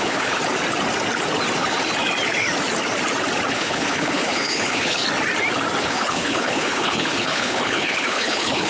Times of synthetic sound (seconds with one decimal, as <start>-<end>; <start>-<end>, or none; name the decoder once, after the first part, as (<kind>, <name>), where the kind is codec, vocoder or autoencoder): 0.0-0.4 (codec, HILCodec); 3.5-5.0; 5.8-8.7